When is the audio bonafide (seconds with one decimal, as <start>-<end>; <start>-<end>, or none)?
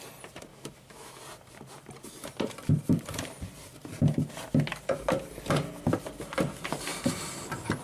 0.0-0.5; 1.2-7.8